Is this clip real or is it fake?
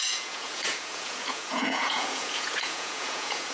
fake